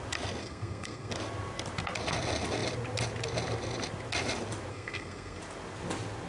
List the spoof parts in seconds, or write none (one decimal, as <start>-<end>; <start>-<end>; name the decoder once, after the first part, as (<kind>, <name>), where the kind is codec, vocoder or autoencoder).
0.4-1.1 (codec, SNAC); 4.7-5.4